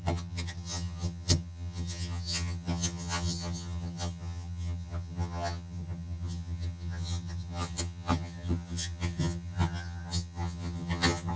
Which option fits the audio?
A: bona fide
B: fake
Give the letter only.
B